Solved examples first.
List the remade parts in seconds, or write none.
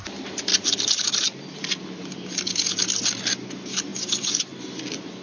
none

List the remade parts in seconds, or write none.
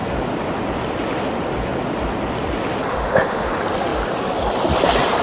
2.9-3.5 (autoencoder, DAC-VAE)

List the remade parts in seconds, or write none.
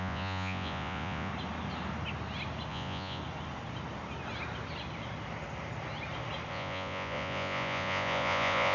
0.0-1.3 (vocoder, Vocos); 2.7-3.2; 6.5-8.7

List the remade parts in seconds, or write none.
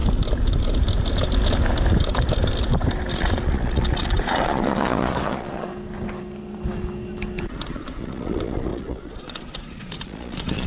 3.1-5.7 (vocoder, Vocos); 7.4-10.7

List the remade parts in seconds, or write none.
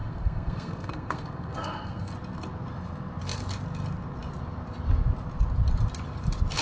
0.0-2.1 (codec, SNAC)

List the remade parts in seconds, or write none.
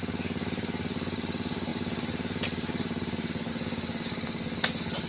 1.7-3.5 (vocoder, BigVGAN v2)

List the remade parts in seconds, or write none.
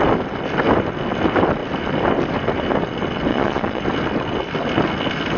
3.3-3.8 (vocoder, Vocos)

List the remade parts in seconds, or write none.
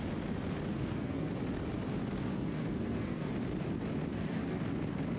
0.7-1.3 (codec, SNAC); 2.3-3.3; 4.1-4.6